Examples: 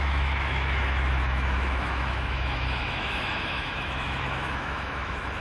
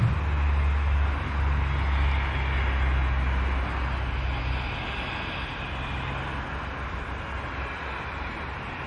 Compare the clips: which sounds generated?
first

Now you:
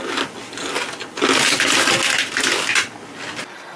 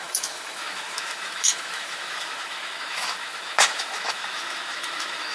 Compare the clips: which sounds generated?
second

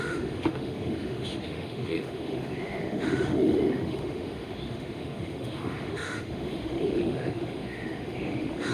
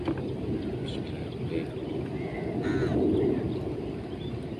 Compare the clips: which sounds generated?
first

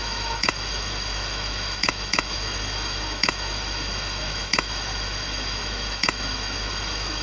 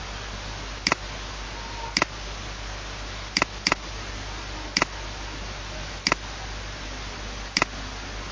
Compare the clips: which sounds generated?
first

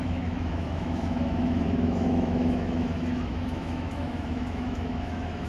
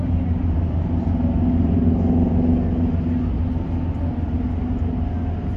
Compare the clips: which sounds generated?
first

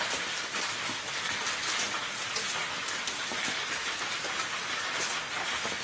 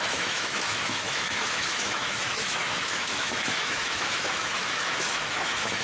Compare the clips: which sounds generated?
second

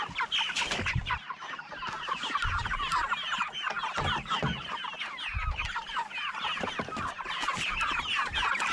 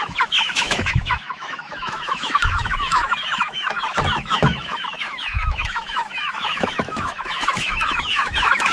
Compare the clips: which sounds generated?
second